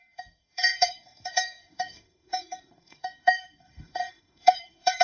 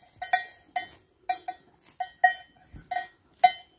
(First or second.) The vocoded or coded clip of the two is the first